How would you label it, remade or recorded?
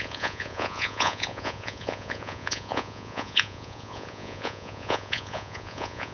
remade